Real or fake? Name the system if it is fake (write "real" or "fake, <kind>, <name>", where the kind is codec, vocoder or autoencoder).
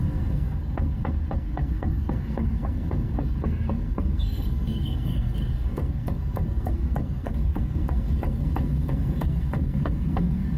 fake, codec, SNAC